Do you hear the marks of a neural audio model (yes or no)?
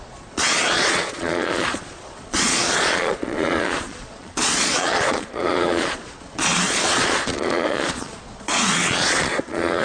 yes